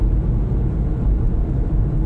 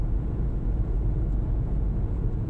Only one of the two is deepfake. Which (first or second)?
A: second